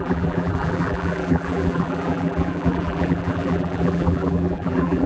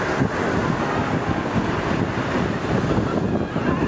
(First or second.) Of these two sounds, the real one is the second